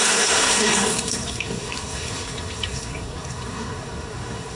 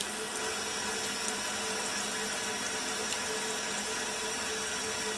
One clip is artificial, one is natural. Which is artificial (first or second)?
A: first